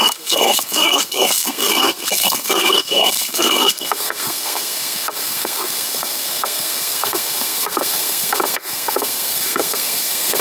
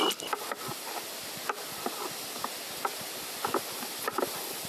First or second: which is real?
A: second